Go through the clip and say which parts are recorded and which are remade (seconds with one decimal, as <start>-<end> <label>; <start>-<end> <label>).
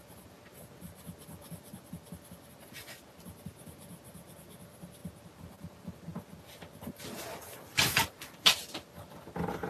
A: 0.0-9.7 recorded